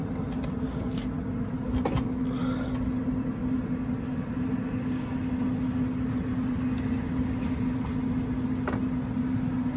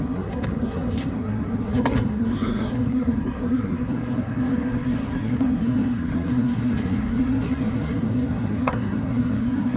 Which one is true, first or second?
first